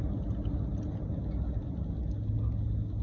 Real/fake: real